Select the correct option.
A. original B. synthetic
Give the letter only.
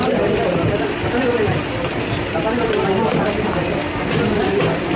A